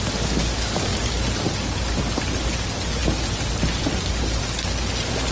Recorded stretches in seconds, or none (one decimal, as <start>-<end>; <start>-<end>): 0.0-5.3